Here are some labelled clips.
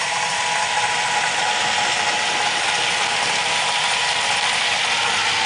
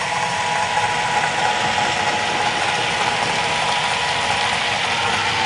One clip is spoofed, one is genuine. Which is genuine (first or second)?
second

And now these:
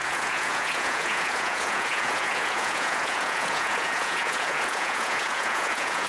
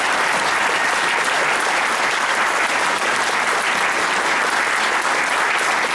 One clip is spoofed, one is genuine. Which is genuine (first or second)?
second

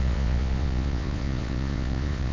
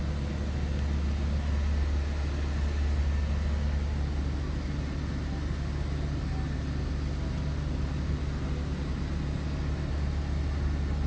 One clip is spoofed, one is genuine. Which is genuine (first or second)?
second